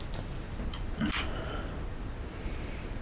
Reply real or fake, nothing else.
real